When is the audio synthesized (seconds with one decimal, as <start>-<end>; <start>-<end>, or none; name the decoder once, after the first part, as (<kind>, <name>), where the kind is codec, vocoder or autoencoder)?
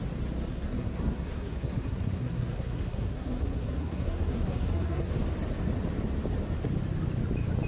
0.5-5.1 (codec, SNAC)